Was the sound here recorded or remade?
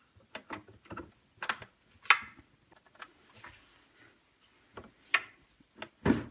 recorded